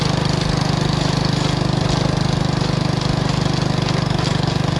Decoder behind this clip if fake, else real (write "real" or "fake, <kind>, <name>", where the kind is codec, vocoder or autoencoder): real